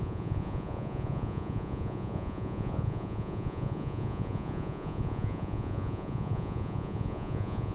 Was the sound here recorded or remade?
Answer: remade